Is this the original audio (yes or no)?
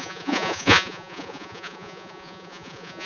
no